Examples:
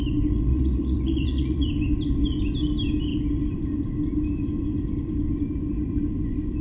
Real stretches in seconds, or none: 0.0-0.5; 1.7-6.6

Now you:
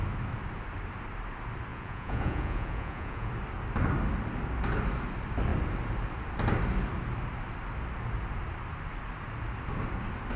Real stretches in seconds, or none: 0.0-1.7; 3.3-10.4

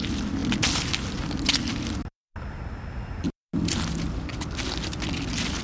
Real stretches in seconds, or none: 0.0-5.6

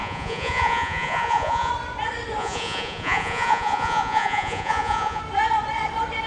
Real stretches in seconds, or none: 1.7-2.4; 5.2-6.3

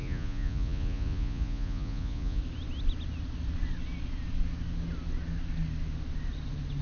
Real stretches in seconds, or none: 2.4-6.8

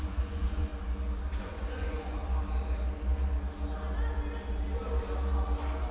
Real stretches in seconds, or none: 0.7-1.4; 2.2-5.9

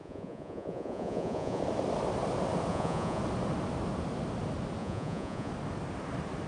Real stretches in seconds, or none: 1.6-2.7; 3.2-4.8; 5.5-6.5